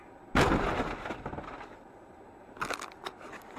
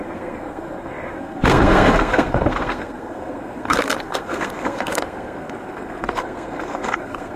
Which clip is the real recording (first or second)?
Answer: first